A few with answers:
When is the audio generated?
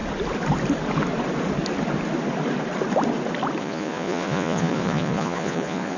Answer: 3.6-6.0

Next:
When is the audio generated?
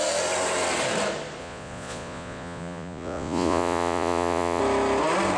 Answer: 1.4-4.6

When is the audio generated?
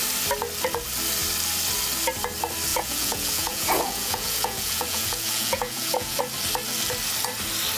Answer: 2.7-6.2